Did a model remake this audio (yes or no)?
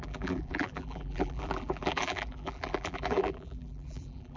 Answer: yes